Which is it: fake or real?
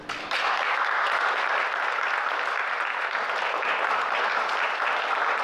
real